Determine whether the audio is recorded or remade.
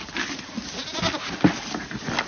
recorded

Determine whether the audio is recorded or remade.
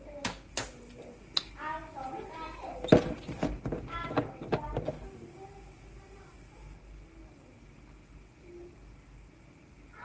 recorded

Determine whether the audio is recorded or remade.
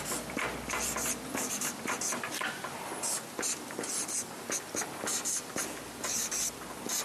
recorded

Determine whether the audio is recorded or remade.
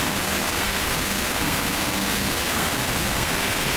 remade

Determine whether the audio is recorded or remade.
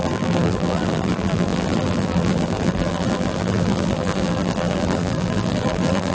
remade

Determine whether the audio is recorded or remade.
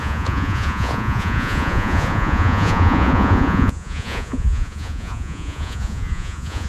remade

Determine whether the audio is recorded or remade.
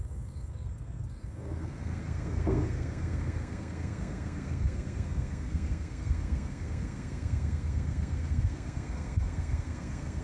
remade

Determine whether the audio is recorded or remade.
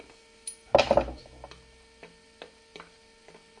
recorded